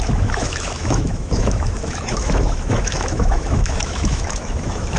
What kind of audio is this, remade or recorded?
remade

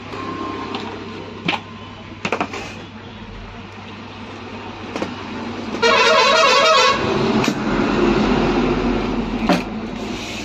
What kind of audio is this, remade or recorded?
recorded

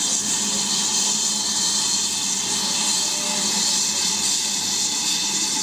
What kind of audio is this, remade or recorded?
recorded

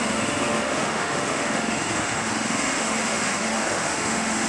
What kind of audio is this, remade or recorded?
remade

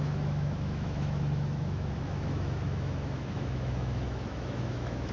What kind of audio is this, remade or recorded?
remade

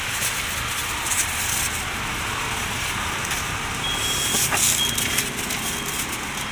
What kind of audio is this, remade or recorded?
recorded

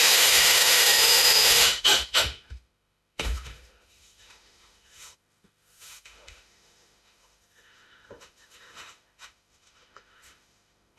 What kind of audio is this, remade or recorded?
remade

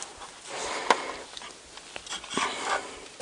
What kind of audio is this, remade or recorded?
recorded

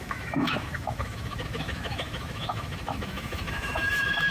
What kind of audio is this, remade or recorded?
remade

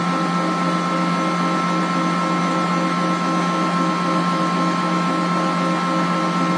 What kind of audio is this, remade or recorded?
recorded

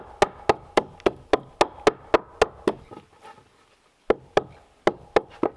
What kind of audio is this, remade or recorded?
recorded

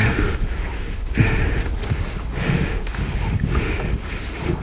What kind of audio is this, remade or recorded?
remade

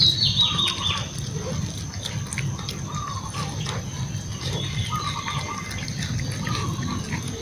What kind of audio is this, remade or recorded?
recorded